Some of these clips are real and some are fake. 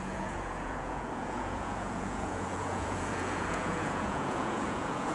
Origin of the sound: fake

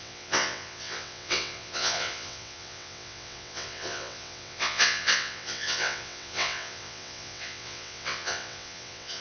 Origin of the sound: fake